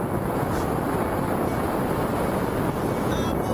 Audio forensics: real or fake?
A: real